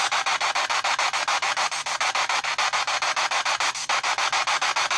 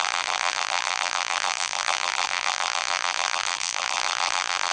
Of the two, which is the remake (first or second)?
second